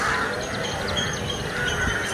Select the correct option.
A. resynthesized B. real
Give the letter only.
B